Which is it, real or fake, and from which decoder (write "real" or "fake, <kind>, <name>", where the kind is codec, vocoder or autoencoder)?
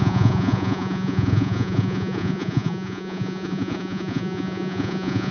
fake, vocoder, Vocos